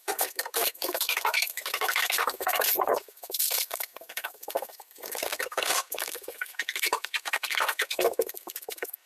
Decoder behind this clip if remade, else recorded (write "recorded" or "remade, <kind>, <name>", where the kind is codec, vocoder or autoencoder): remade, codec, SNAC